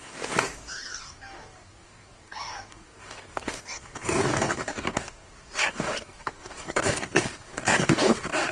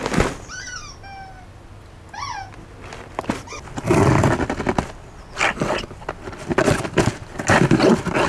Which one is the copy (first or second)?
first